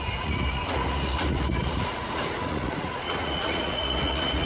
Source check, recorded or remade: remade